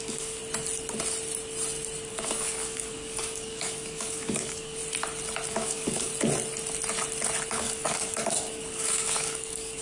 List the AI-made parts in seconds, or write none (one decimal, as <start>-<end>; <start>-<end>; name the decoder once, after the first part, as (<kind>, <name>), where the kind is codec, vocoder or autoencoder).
0.0-0.4 (codec, DAC); 2.1-4.8; 5.5-6.1; 7.5-9.8